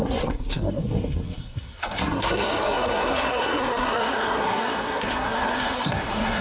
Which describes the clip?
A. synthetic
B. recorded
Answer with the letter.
A